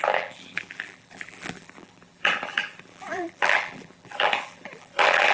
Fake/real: fake